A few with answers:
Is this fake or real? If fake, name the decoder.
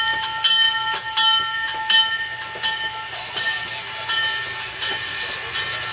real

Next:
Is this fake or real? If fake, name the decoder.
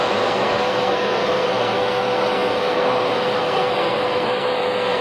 fake, codec, SNAC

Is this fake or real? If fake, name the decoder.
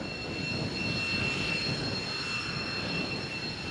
real